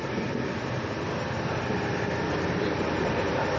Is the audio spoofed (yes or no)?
yes